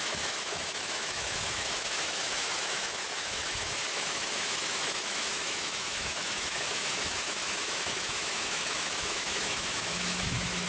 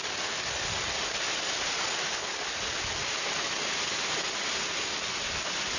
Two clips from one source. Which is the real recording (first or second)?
second